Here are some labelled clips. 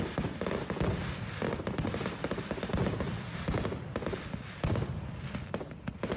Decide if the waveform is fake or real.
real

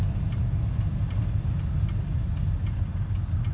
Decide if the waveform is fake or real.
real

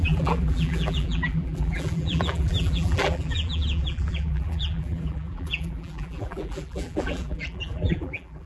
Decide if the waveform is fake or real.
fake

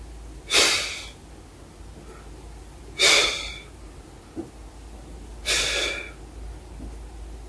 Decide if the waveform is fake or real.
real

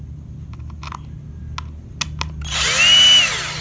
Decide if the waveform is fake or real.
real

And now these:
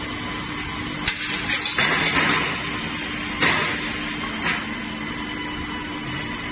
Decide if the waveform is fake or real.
real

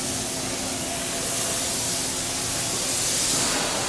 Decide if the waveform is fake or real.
real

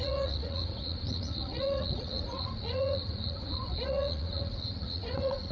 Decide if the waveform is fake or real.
fake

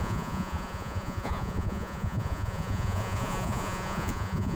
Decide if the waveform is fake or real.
fake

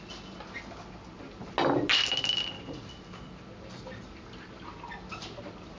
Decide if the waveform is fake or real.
real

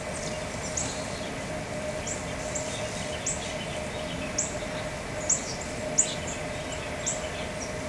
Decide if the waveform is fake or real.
real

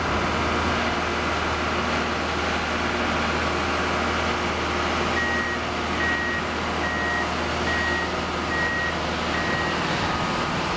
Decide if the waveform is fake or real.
real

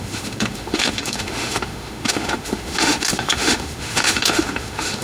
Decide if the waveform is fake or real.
fake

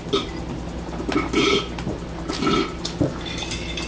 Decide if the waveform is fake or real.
real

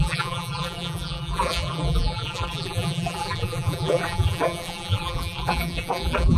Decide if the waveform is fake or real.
fake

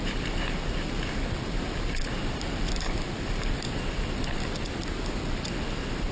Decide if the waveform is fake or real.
real